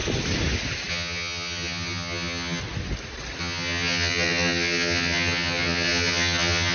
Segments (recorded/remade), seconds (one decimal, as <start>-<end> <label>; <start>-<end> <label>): 0.0-0.9 recorded; 0.9-2.6 remade; 2.6-3.4 recorded; 3.4-6.7 remade